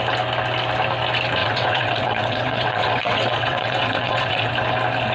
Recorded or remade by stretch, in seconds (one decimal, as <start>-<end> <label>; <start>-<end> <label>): 0.0-1.4 recorded; 1.4-4.5 remade; 4.5-5.1 recorded